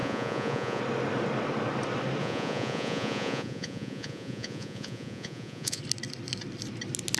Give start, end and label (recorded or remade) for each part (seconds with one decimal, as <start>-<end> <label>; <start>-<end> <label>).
0.0-0.8 remade; 0.8-2.2 recorded; 2.2-5.8 remade; 5.8-7.2 recorded